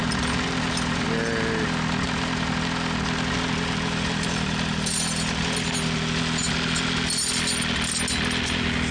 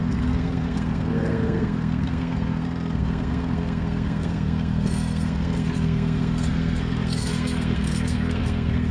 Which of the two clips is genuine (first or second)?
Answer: first